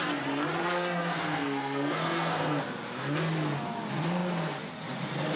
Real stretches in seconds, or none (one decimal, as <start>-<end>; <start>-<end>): 0.0-0.6; 2.6-5.4